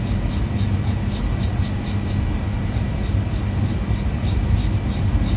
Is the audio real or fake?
real